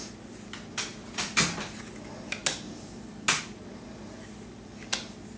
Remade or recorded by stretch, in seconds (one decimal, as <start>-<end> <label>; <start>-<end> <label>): 0.0-5.4 recorded